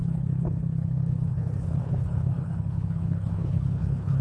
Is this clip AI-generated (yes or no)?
yes